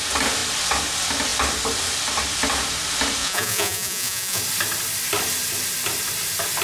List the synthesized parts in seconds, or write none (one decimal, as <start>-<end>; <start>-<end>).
3.2-4.4